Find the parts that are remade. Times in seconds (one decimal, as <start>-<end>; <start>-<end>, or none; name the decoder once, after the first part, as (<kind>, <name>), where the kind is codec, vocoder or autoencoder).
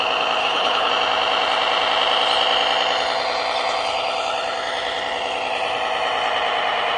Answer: 0.4-0.9 (codec, HILCodec)